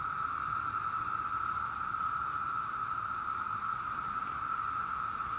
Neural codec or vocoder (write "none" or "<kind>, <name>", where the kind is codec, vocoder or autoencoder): none